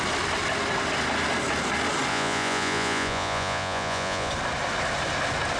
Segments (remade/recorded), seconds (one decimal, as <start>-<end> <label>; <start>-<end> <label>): 0.0-2.1 recorded; 2.1-4.3 remade; 4.3-5.6 recorded